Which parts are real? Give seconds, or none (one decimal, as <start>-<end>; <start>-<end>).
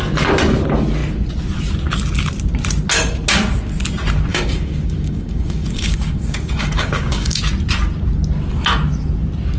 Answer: 0.0-4.3; 7.4-9.6